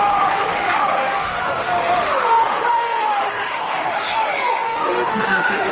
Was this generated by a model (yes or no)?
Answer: yes